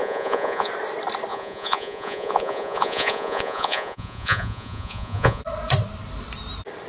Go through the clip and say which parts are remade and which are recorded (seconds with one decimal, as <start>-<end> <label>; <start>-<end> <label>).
0.0-0.7 remade; 0.7-1.3 recorded; 1.3-5.4 remade; 5.4-6.9 recorded